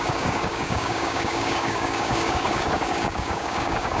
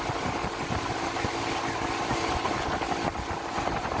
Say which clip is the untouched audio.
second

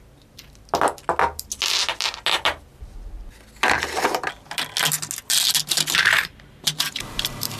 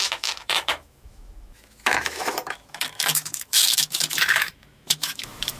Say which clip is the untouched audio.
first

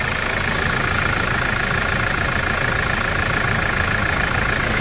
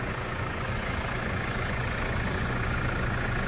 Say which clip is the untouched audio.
first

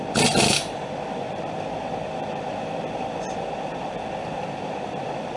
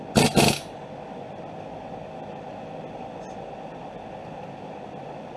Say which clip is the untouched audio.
second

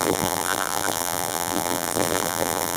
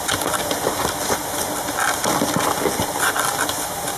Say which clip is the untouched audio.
second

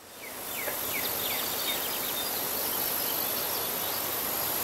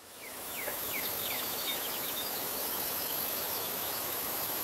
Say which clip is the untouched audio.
first